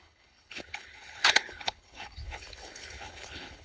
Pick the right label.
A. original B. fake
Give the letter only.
B